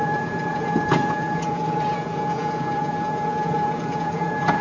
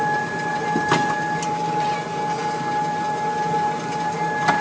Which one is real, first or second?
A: second